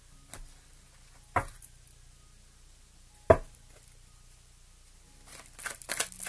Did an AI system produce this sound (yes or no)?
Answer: no